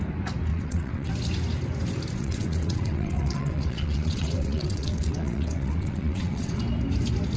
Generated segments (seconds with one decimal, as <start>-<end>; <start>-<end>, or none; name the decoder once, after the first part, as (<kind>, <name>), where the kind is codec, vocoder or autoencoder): 0.5-1.1 (vocoder, WaveNeXt); 2.2-6.6